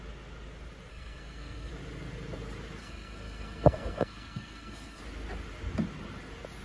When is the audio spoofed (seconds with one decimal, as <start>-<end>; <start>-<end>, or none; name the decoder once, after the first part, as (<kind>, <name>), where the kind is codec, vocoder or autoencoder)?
0.9-1.7 (codec, SNAC); 2.8-5.0